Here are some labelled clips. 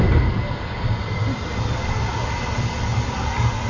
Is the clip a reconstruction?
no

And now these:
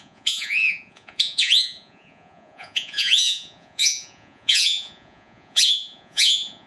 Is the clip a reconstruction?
yes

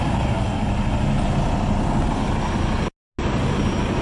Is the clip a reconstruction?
no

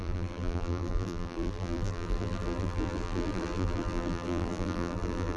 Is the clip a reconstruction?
yes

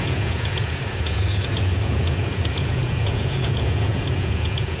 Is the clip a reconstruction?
yes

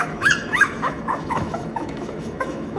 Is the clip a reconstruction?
yes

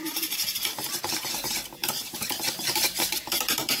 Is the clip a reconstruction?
yes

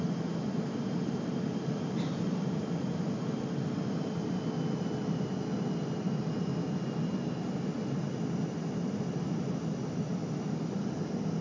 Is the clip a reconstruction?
no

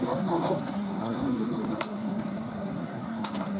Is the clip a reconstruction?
yes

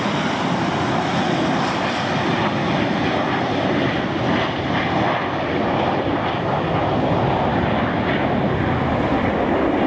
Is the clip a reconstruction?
no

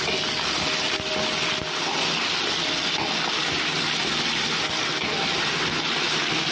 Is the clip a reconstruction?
no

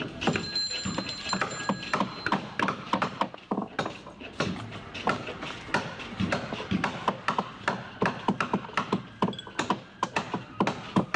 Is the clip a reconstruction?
no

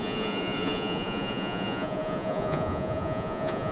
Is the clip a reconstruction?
yes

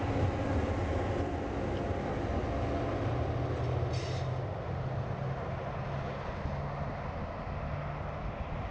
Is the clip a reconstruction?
no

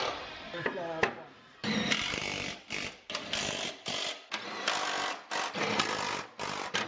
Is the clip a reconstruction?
no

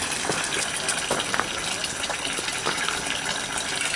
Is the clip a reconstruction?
no